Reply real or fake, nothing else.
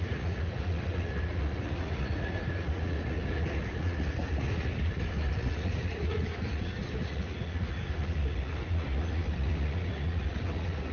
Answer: fake